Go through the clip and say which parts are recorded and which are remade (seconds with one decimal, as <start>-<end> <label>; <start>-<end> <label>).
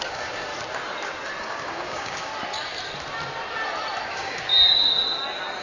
0.0-0.5 remade; 0.5-1.4 recorded; 1.4-2.3 remade; 2.3-4.0 recorded; 4.0-4.5 remade; 4.5-5.6 recorded